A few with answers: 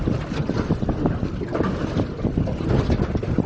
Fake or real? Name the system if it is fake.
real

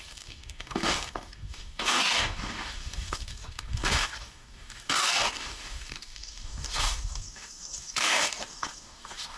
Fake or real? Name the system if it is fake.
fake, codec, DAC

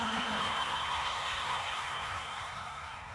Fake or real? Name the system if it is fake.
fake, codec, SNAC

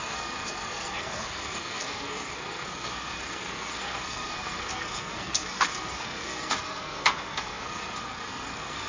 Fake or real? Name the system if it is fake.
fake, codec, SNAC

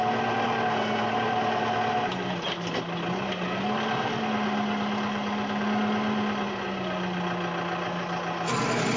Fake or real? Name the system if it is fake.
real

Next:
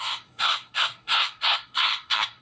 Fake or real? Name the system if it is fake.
fake, codec, SNAC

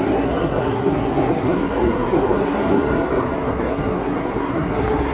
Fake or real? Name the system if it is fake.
fake, codec, SNAC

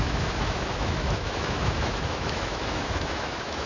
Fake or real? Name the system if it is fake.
fake, autoencoder, DAC-VAE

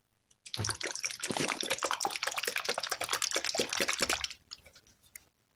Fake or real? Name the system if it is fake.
real